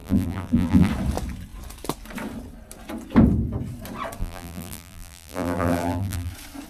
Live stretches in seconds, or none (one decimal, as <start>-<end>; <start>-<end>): 0.9-4.2; 6.3-6.7